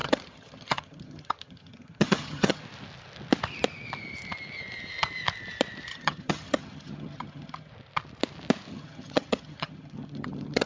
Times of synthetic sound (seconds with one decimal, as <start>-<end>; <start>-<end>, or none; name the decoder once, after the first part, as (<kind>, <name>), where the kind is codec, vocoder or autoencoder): 0.0-2.6 (vocoder, HiFi-GAN); 5.9-7.7; 8.7-10.7